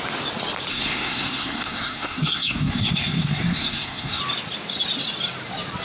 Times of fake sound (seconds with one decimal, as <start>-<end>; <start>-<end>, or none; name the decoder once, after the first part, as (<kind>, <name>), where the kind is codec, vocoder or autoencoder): 0.7-4.2 (codec, SNAC)